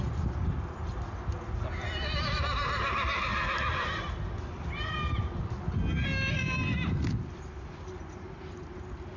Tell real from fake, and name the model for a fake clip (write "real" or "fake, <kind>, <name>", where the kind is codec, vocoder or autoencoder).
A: real